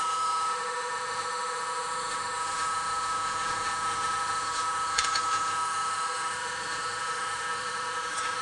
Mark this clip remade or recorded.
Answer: remade